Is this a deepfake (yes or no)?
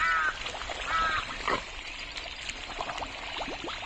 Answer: no